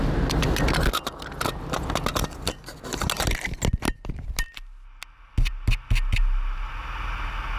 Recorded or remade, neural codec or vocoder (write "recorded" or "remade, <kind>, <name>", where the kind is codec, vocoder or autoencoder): recorded